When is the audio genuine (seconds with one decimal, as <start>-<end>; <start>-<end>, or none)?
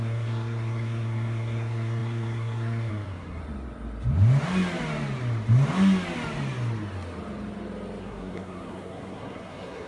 3.4-8.0